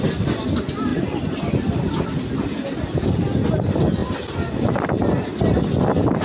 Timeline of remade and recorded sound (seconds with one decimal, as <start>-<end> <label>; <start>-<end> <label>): 0.0-6.2 recorded